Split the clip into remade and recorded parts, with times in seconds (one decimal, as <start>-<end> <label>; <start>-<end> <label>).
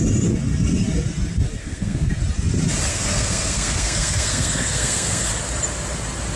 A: 0.0-1.6 recorded; 1.6-2.1 remade; 2.1-2.9 recorded; 2.9-5.3 remade; 5.3-6.4 recorded